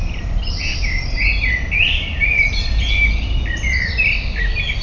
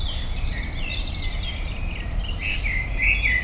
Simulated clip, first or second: first